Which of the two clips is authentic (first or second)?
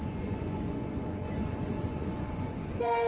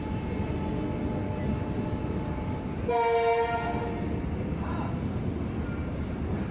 second